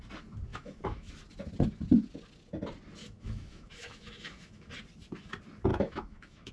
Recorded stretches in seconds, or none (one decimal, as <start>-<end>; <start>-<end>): 0.0-0.5; 1.1-3.0; 4.7-5.7